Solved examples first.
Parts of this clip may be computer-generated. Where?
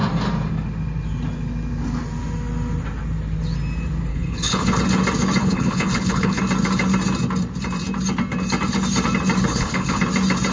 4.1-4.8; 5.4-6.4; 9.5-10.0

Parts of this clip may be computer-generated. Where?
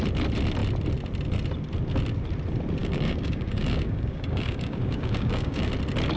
2.8-5.7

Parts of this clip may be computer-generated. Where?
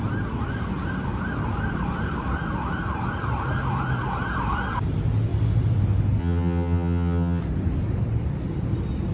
6.2-7.4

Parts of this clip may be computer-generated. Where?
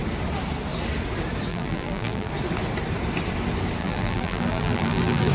1.5-2.3; 3.8-5.3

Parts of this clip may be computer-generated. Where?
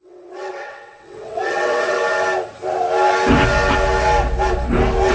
0.0-2.0